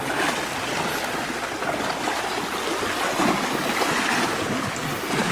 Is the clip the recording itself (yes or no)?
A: yes